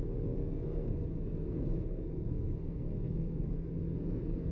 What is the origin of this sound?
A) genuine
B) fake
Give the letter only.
B